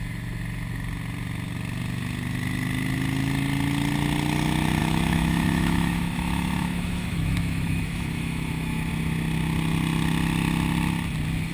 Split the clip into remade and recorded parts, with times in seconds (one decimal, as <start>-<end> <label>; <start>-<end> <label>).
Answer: 0.0-4.8 recorded; 4.8-8.9 remade; 8.9-11.5 recorded